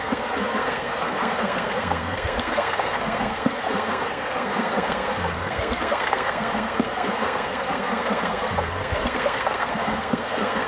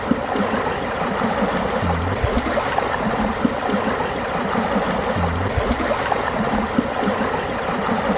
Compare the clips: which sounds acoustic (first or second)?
second